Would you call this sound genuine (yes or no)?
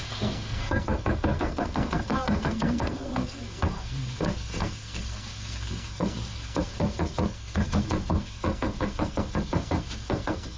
no